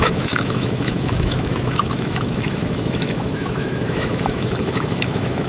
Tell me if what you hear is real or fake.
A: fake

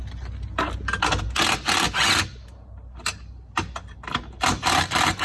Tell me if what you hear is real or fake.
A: real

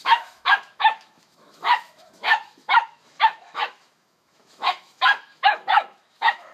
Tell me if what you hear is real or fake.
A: fake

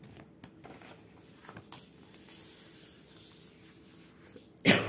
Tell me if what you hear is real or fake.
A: real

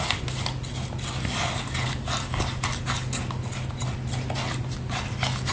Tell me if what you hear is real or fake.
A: real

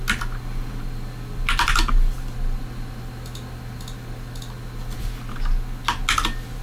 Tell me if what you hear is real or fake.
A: real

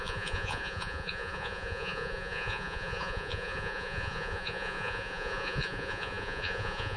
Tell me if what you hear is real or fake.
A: fake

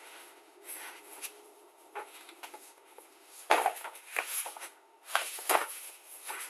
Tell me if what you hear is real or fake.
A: fake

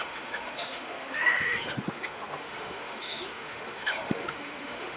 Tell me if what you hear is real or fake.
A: fake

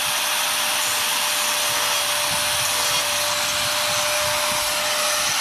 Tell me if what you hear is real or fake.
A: real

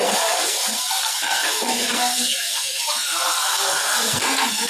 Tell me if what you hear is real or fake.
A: fake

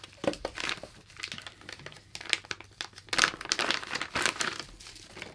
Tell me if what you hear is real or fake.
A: real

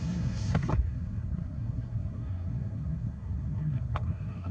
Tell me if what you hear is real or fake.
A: fake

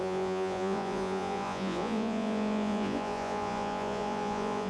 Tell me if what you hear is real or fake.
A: fake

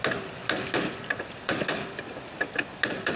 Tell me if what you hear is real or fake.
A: real